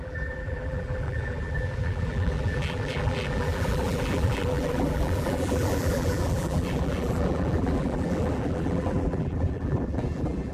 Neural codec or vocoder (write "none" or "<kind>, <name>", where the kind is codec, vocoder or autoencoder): vocoder, BigVGAN v2